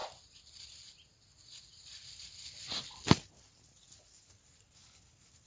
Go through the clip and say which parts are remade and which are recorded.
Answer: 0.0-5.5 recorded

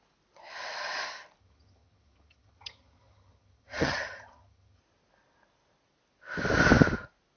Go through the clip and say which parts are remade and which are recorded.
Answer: 0.0-1.4 recorded; 1.4-4.8 remade; 4.8-7.4 recorded

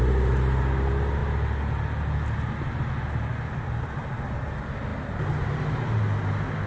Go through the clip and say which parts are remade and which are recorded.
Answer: 0.0-6.7 recorded

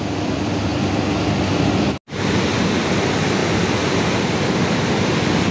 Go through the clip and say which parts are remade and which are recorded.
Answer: 0.0-5.5 recorded

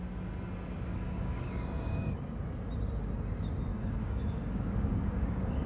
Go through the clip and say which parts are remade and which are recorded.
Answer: 0.0-0.9 recorded; 0.9-2.4 remade; 2.4-3.7 recorded; 3.7-5.7 remade